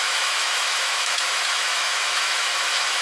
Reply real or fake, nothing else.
fake